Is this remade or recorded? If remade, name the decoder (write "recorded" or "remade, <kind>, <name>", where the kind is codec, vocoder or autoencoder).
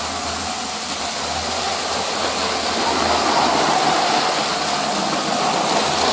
recorded